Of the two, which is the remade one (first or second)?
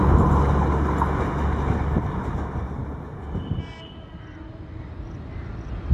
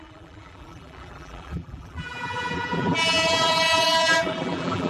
second